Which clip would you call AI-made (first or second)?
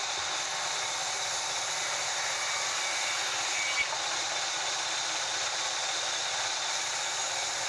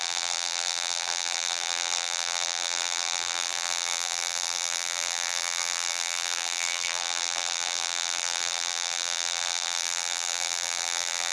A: second